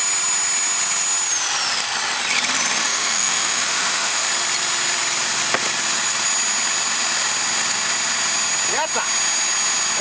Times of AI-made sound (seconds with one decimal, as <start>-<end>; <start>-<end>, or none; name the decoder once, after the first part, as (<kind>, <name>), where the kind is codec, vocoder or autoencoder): 2.8-4.3 (autoencoder, DAC-VAE)